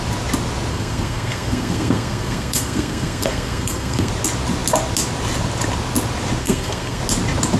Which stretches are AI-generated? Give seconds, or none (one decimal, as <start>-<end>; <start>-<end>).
0.7-4.1; 6.4-7.0